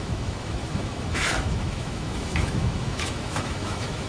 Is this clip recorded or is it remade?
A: remade